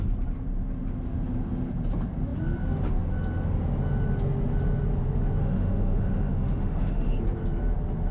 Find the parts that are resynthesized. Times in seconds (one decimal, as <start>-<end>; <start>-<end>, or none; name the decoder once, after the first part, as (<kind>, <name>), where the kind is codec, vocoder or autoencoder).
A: 5.4-7.2 (autoencoder, DAC-VAE)